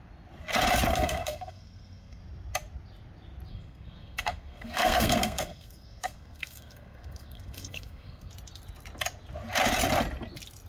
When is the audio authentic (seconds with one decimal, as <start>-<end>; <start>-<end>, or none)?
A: 0.0-0.9; 2.2-3.5; 8.3-10.7